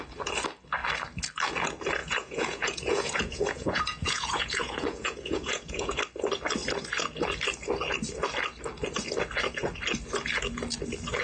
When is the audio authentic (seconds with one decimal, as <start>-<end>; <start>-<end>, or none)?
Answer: 0.0-2.0; 6.0-11.2